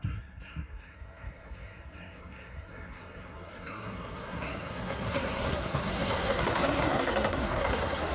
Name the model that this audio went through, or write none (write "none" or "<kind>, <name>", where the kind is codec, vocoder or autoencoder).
codec, SNAC